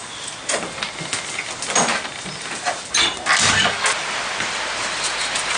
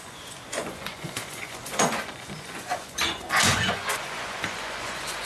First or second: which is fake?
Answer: second